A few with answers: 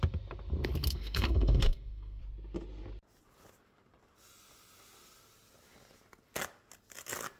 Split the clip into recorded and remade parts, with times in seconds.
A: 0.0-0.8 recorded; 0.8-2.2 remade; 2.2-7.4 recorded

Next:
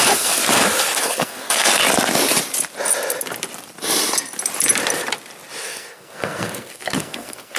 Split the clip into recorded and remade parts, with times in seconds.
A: 0.0-0.4 remade; 0.4-1.0 recorded; 1.0-1.8 remade; 1.8-5.6 recorded; 5.6-7.6 remade

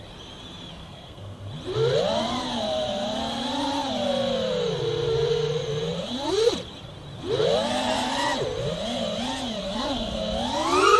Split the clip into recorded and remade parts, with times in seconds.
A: 0.0-0.8 recorded; 0.8-1.5 remade; 1.5-9.6 recorded; 9.6-10.2 remade; 10.2-11.0 recorded

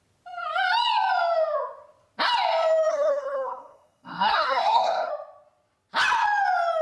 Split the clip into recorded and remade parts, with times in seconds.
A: 0.0-2.9 recorded; 2.9-5.1 remade; 5.1-6.8 recorded